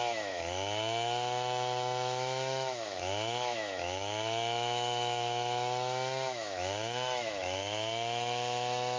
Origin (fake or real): fake